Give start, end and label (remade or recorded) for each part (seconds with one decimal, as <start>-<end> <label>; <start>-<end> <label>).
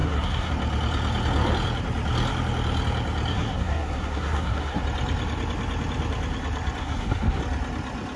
0.0-0.5 remade; 0.5-3.3 recorded; 3.3-4.8 remade; 4.8-6.8 recorded; 6.8-7.4 remade; 7.4-8.2 recorded